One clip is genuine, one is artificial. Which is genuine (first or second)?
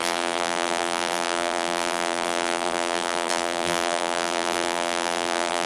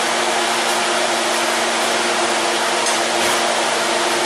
second